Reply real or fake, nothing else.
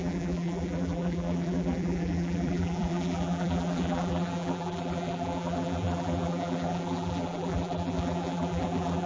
fake